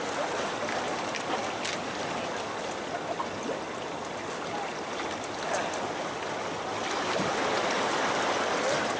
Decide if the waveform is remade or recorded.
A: recorded